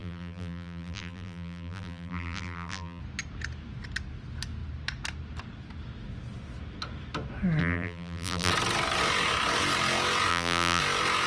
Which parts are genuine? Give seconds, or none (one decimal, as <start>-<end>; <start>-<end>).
3.0-7.6; 8.5-10.3; 10.8-11.3